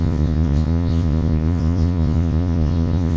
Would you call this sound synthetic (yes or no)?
yes